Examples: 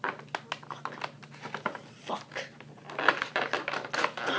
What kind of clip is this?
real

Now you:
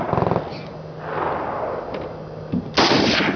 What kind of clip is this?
real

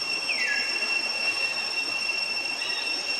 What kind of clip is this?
real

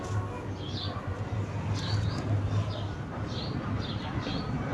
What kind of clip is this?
real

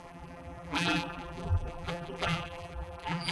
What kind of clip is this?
fake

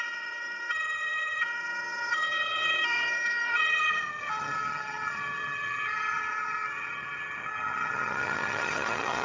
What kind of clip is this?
fake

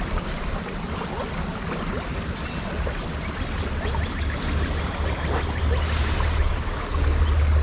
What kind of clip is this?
real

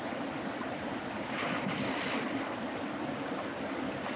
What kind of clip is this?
real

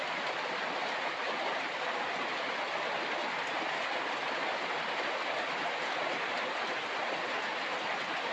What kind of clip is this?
real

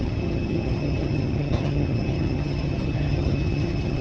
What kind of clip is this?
fake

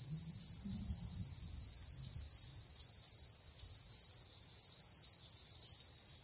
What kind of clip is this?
real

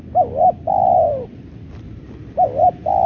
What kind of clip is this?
real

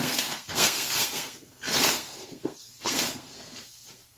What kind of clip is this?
fake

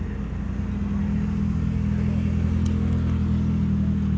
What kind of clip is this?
real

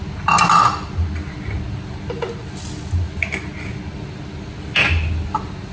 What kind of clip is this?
real